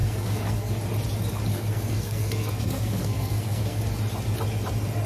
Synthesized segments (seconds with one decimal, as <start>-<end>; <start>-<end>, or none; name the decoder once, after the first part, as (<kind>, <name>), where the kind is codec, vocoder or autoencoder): 0.0-0.7 (codec, SNAC); 1.5-3.8